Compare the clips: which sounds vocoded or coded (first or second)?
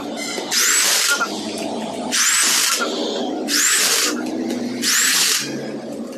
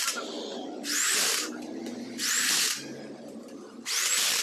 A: second